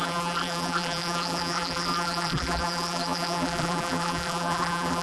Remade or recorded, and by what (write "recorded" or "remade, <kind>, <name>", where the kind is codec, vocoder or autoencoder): remade, vocoder, BigVGAN v2